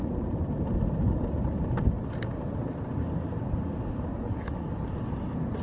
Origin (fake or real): real